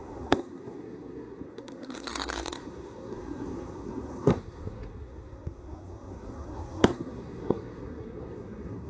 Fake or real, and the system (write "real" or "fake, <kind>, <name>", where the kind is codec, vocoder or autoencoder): fake, codec, SNAC